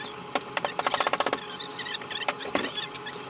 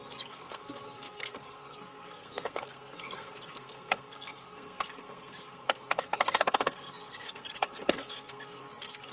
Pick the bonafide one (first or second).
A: first